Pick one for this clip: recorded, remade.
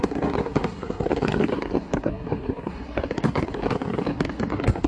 remade